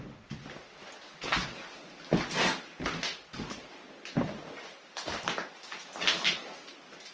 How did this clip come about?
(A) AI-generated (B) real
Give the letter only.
B